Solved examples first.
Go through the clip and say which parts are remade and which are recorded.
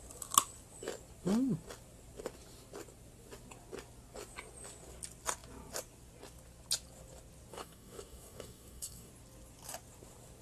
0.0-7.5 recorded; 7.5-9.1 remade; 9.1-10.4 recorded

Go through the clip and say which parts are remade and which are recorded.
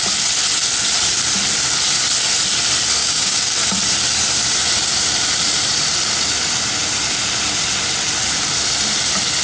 0.0-3.0 recorded; 3.0-3.5 remade; 3.5-9.4 recorded